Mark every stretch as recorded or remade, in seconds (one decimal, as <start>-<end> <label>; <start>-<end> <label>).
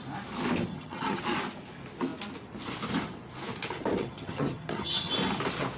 0.0-0.7 recorded; 0.7-1.2 remade; 1.2-4.0 recorded; 4.0-5.1 remade; 5.1-5.8 recorded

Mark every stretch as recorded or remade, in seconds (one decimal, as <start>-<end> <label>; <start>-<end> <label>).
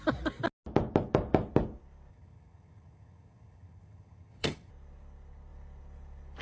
0.0-2.1 recorded; 2.1-4.7 remade; 4.7-6.4 recorded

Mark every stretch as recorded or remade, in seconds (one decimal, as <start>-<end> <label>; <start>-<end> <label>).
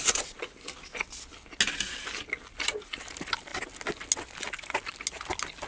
0.0-5.7 recorded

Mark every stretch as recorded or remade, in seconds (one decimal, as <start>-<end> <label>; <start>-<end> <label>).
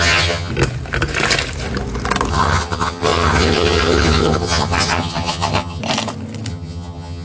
0.0-0.5 remade; 0.5-2.3 recorded; 2.3-5.8 remade; 5.8-6.5 recorded; 6.5-7.2 remade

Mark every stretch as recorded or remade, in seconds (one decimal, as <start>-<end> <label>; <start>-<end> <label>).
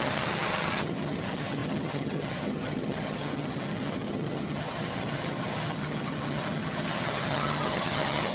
0.0-8.3 remade